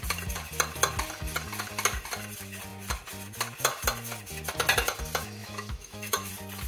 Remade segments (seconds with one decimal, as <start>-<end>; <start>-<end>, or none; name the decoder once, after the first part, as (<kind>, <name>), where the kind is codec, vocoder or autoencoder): 5.4-6.3 (autoencoder, DAC-VAE)